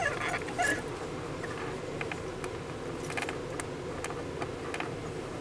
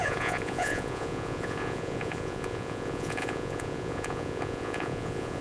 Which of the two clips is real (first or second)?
first